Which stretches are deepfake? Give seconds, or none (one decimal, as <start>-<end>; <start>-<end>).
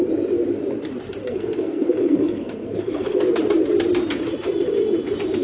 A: 1.2-3.2